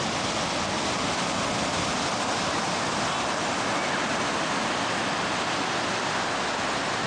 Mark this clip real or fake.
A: real